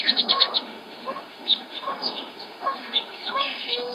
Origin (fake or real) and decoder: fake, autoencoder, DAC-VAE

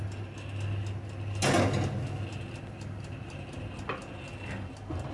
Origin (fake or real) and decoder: real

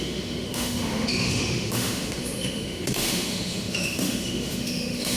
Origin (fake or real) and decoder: fake, autoencoder, DAC-VAE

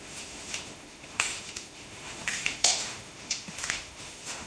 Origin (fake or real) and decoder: fake, autoencoder, DAC-VAE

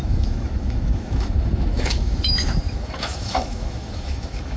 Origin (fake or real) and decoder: fake, autoencoder, DAC-VAE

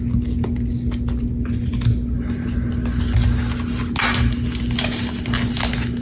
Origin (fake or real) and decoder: real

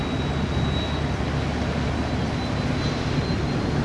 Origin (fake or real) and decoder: real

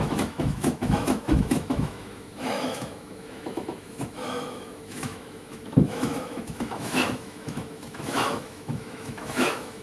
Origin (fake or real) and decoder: fake, autoencoder, DAC-VAE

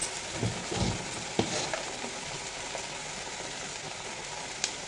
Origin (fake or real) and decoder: real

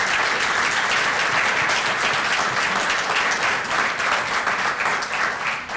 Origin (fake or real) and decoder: real